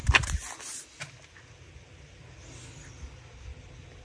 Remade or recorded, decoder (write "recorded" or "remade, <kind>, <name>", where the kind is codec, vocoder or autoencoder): recorded